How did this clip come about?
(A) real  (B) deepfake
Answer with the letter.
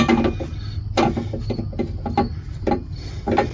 A